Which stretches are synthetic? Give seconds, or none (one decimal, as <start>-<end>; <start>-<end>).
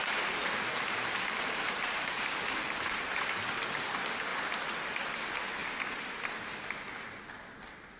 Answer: 0.7-2.2